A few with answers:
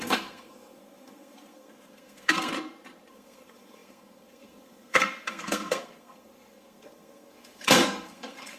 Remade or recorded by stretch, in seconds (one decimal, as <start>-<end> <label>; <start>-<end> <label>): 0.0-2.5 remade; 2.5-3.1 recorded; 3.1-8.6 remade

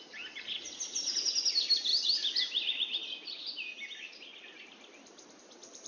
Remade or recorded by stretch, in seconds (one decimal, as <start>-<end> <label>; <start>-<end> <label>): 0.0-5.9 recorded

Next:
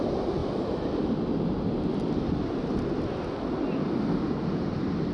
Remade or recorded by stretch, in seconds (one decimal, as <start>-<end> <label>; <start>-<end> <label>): 0.0-5.1 recorded